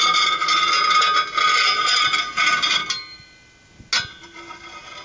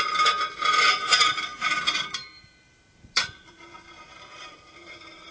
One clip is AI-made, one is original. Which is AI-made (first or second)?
second